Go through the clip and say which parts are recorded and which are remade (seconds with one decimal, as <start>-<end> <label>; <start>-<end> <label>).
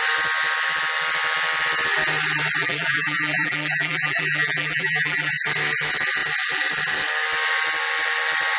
0.0-2.6 recorded; 2.6-5.3 remade; 5.3-8.6 recorded